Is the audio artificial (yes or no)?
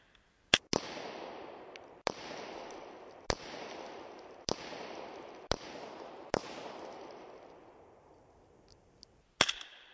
no